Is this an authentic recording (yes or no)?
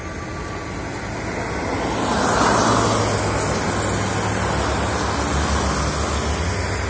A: yes